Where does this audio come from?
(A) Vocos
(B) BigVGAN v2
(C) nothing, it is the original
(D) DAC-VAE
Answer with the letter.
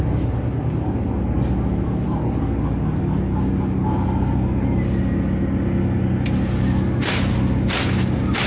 C